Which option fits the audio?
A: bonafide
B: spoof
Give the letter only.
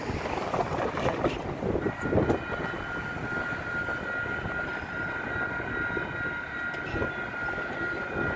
A